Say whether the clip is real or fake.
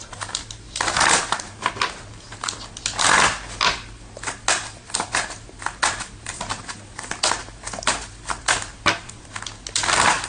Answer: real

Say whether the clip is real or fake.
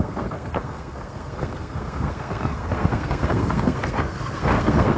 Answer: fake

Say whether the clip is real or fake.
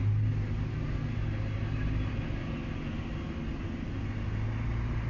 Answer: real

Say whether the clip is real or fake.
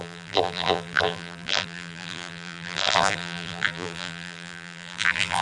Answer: fake